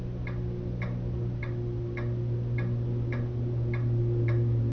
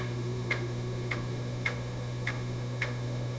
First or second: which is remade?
second